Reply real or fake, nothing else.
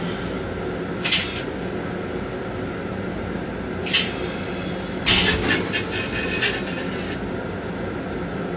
real